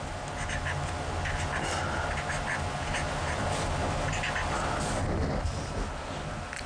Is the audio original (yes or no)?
yes